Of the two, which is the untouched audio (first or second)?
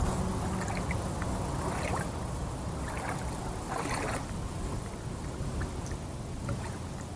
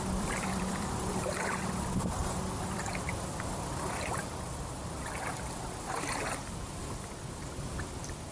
first